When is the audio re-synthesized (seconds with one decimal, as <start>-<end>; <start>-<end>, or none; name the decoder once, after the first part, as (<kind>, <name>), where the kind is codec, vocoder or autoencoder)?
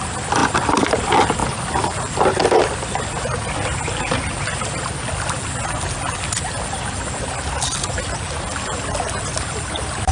0.4-1.0 (vocoder, BigVGAN v2); 1.4-2.0